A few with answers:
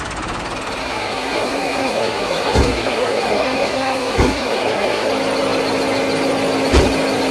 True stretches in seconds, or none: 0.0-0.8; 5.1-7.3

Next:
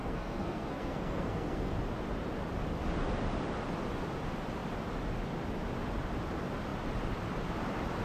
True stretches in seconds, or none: 1.7-8.0

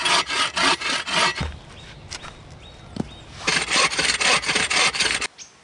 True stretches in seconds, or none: 0.0-5.6